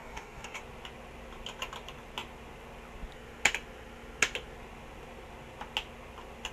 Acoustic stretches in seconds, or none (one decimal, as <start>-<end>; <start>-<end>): 0.6-6.5